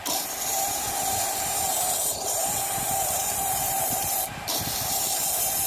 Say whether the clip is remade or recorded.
remade